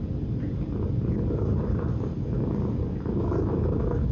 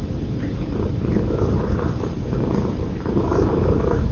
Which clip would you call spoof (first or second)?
second